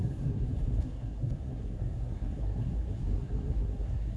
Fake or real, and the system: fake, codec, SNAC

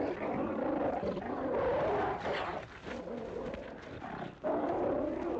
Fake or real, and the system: real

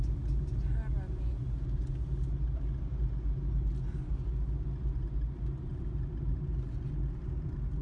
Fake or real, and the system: real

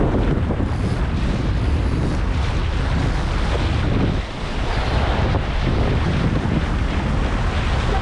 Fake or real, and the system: real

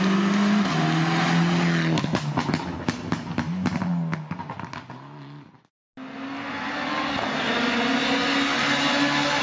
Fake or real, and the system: real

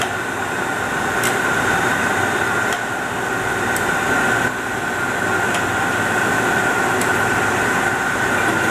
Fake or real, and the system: real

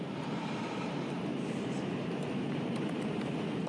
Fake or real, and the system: fake, vocoder, BigVGAN v2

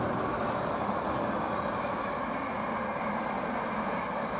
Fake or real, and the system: real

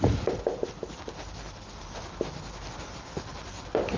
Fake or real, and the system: real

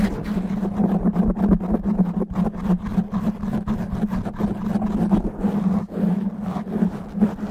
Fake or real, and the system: real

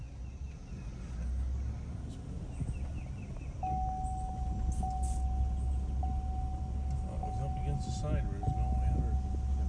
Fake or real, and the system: real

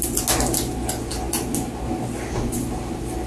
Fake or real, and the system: real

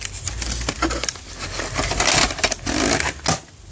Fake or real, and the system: real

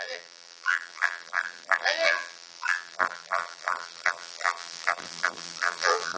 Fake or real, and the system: fake, vocoder, BigVGAN v2